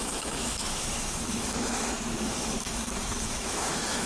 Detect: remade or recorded remade